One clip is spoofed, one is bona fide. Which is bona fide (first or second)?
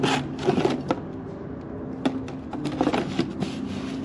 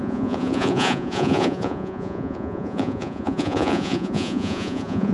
first